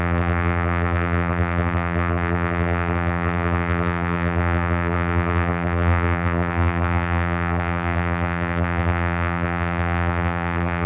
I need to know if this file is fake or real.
fake